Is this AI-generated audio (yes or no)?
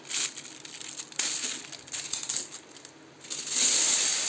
no